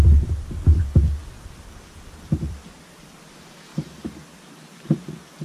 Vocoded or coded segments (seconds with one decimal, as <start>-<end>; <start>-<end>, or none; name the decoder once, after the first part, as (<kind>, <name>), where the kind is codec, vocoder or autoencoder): 1.2-2.8 (vocoder, BigVGAN v2); 3.7-4.6